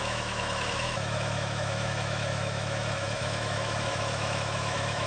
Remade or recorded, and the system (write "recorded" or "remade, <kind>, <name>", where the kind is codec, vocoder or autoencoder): remade, autoencoder, DAC-VAE